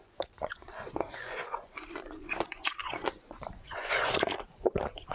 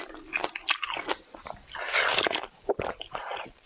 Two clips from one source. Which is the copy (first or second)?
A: first